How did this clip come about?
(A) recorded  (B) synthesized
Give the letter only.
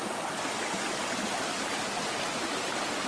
A